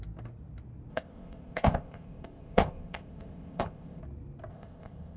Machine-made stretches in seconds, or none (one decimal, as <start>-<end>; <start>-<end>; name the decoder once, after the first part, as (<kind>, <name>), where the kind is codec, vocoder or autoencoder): 0.9-4.0 (codec, ZipCodec); 4.5-5.2